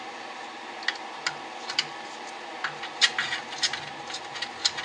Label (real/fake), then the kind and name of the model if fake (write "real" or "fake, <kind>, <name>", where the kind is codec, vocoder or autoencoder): real